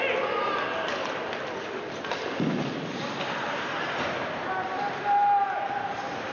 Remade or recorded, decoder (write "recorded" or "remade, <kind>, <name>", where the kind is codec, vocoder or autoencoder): recorded